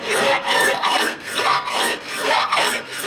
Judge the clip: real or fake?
fake